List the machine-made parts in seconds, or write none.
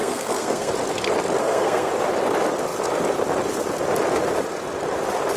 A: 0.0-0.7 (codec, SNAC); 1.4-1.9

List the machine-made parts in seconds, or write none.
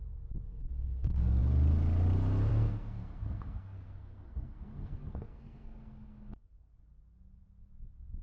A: 0.5-1.4 (codec, SNAC); 2.5-7.0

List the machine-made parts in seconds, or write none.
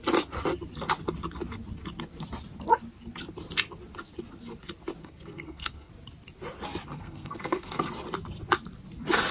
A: 5.0-5.9 (codec, SNAC); 6.9-7.9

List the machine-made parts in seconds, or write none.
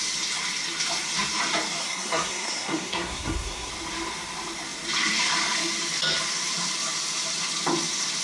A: 1.8-3.7 (codec, SNAC)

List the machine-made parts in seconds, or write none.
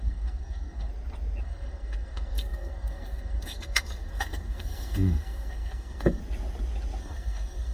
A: 0.0-0.9 (codec, SNAC); 1.4-6.2; 7.0-7.7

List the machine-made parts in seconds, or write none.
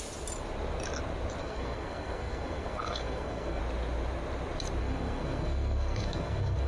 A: 1.4-3.6 (codec, SNAC); 4.8-6.7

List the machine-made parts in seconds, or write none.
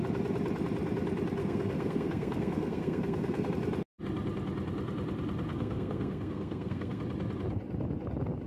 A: 1.4-3.5 (codec, SNAC); 5.5-7.0